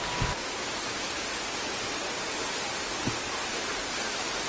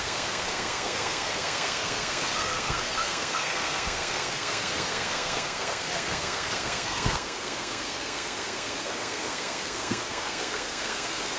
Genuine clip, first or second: first